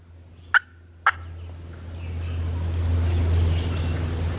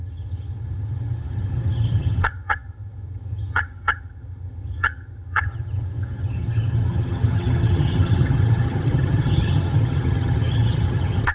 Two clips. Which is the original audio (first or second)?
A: first